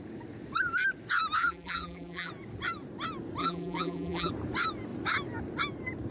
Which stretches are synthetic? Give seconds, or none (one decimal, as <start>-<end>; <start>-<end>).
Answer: 1.4-2.3; 3.4-4.3